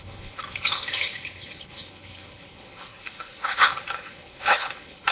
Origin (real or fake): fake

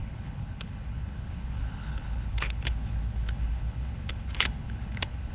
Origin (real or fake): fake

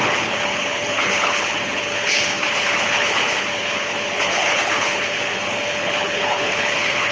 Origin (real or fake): fake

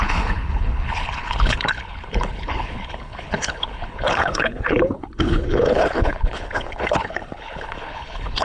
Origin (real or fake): fake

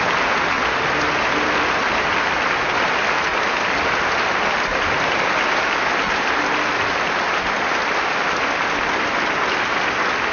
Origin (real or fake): real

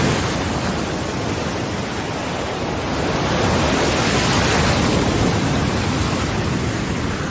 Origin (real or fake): real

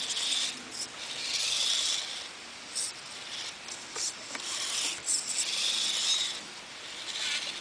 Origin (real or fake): real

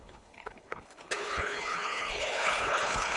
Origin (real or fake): fake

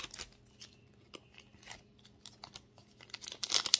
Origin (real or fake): real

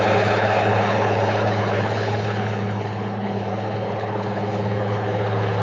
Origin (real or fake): fake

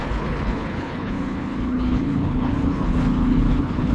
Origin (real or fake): fake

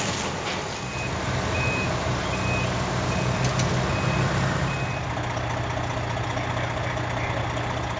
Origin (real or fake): real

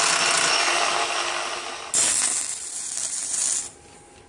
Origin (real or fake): real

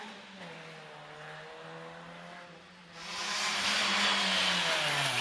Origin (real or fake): real